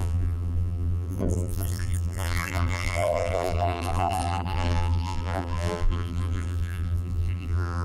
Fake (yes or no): yes